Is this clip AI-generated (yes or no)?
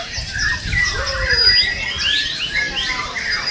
no